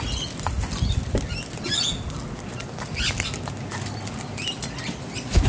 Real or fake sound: real